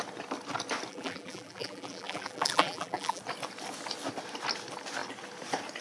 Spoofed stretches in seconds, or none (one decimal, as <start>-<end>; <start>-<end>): 0.9-3.2